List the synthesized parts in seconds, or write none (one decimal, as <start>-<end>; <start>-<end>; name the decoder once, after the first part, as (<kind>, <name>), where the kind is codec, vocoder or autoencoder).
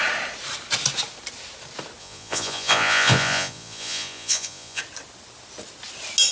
2.0-4.8 (vocoder, Vocos)